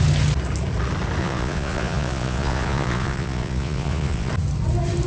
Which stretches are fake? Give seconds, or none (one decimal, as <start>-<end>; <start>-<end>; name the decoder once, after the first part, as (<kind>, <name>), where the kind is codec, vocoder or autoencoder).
1.2-4.3 (vocoder, Vocos)